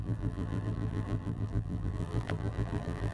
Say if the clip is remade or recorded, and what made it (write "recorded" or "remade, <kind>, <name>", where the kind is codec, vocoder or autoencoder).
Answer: remade, vocoder, BigVGAN v2